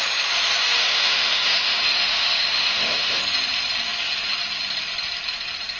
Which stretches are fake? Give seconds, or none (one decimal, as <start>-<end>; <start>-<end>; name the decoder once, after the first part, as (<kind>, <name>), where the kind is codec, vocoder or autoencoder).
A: 0.8-3.2 (autoencoder, DAC-VAE)